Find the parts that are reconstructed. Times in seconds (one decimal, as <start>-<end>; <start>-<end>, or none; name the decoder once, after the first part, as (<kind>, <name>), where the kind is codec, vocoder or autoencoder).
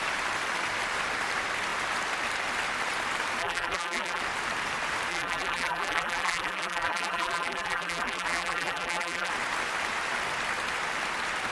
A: 3.4-4.2 (vocoder, BigVGAN v2); 5.1-9.3